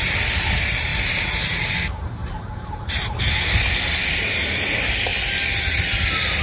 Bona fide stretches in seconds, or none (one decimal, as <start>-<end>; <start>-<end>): 0.0-2.2; 3.2-6.4